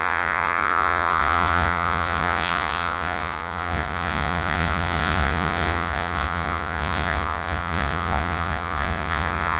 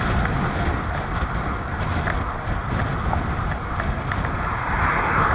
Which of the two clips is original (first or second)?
second